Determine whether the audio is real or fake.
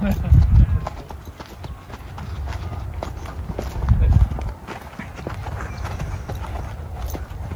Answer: real